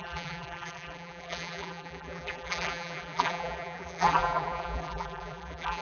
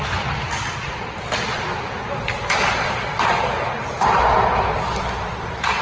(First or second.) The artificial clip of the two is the first